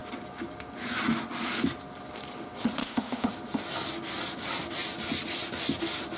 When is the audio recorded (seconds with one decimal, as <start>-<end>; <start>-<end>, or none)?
0.0-2.8; 3.3-6.2